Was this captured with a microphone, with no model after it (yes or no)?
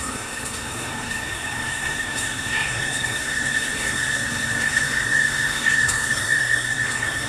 no